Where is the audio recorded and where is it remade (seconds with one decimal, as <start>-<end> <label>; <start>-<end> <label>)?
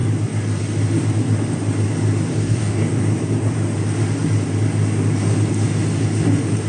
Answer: 0.0-2.3 recorded; 2.3-3.0 remade; 3.0-6.7 recorded